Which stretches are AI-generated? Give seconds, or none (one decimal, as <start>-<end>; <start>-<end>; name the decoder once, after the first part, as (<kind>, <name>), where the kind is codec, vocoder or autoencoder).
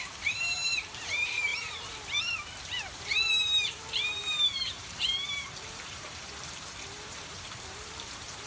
0.0-8.5 (vocoder, BigVGAN v2)